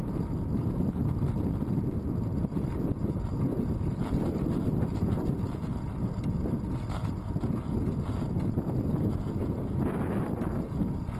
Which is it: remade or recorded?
recorded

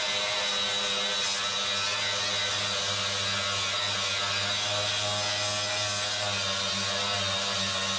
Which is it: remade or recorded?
recorded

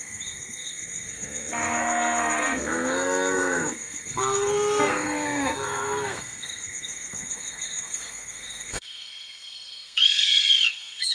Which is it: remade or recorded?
remade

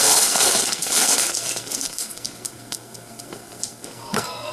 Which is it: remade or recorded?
remade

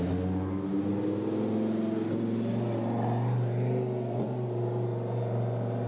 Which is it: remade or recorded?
recorded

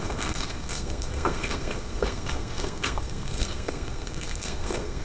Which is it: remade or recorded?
remade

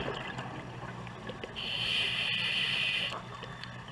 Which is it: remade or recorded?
recorded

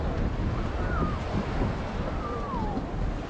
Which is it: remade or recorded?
recorded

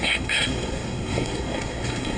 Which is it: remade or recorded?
remade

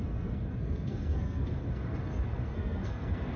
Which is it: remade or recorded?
remade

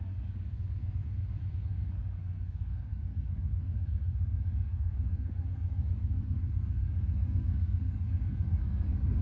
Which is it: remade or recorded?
remade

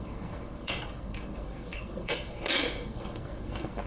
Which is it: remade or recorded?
remade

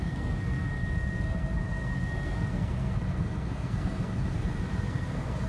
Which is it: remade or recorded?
remade